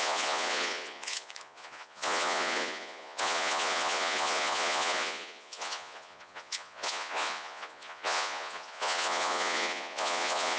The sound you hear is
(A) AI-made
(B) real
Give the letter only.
A